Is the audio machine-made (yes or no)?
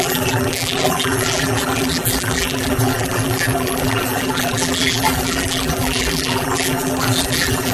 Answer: yes